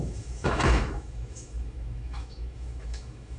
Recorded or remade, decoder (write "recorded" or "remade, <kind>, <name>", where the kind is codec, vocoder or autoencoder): remade, autoencoder, DAC-VAE